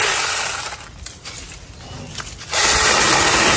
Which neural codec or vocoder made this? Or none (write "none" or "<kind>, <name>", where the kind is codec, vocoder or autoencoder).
none